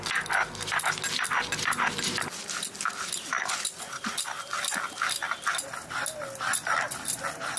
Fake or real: real